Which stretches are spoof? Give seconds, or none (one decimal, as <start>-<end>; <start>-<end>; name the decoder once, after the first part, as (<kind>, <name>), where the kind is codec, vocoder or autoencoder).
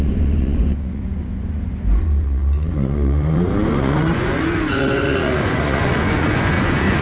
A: 0.0-7.0 (vocoder, Vocos)